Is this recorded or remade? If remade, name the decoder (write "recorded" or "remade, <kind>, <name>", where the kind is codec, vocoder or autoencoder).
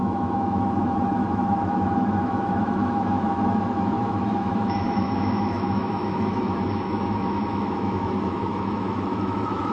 remade, autoencoder, DAC-VAE